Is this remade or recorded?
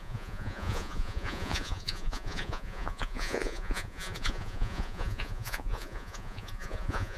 remade